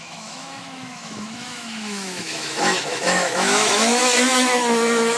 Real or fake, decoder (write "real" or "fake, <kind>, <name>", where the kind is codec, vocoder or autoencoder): fake, autoencoder, DAC-VAE